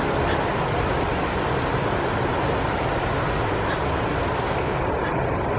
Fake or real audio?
real